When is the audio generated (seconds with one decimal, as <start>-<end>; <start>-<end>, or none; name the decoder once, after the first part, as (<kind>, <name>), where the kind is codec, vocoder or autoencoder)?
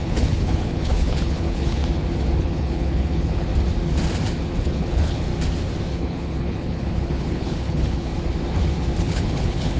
0.0-1.8 (codec, HILCodec); 2.4-3.5; 4.6-5.3; 5.9-8.1; 9.0-9.8